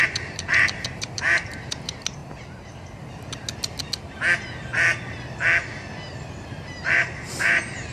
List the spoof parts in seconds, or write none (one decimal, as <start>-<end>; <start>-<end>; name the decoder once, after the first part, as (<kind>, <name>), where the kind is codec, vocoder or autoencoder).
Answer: 0.0-2.2 (vocoder, BigVGAN v2); 6.4-7.9